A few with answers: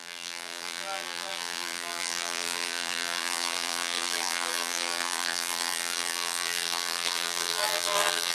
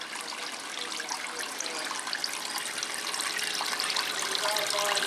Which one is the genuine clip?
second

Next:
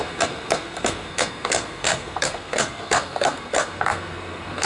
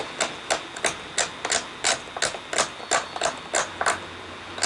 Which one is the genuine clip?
second